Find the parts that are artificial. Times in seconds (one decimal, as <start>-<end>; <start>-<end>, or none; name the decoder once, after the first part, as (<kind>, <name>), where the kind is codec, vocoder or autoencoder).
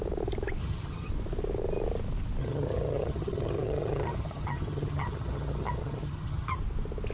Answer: 0.6-1.1 (vocoder, HiFi-GAN); 2.4-6.6